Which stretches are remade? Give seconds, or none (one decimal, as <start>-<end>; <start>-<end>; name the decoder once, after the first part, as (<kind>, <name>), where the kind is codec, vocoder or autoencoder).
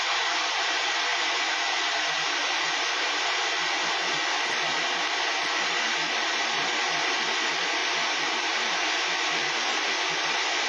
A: 1.1-3.2 (vocoder, BigVGAN v2); 7.8-9.0